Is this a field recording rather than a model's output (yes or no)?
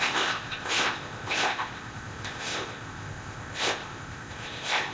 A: no